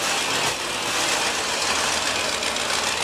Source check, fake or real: real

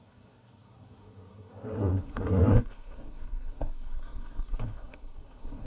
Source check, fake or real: fake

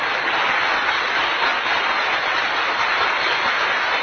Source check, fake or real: real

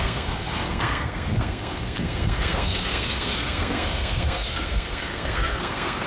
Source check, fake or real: fake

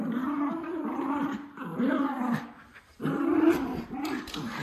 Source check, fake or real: real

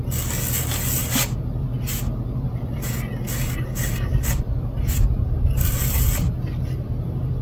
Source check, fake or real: real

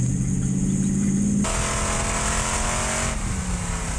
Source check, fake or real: real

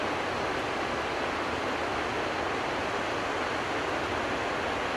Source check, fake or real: real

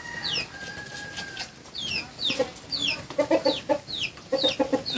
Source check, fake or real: real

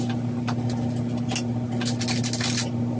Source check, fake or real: real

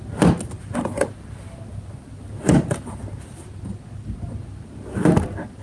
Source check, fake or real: real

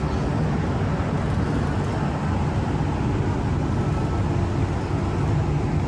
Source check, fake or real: real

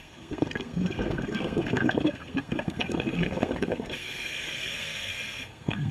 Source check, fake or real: fake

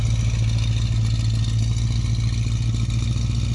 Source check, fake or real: real